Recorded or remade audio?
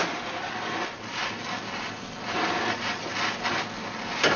recorded